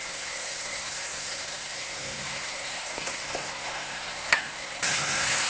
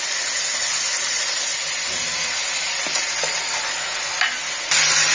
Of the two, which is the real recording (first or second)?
second